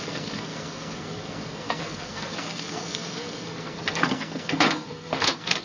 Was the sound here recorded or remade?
remade